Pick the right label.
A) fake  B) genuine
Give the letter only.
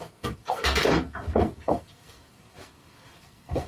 A